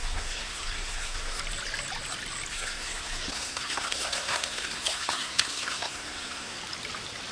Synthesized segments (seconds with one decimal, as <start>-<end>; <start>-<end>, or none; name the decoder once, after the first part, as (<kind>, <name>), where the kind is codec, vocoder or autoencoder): 0.0-1.4 (codec, SNAC); 2.5-6.6